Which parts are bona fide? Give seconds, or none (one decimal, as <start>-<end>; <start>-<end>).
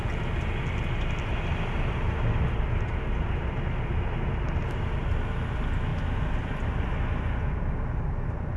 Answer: 0.0-8.6